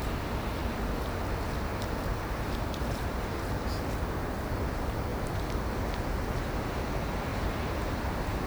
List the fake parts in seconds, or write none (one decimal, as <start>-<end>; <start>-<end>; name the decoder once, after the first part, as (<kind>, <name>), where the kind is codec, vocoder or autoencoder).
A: 2.1-3.4 (vocoder, BigVGAN v2); 7.3-8.0